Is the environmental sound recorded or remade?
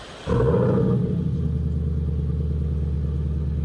recorded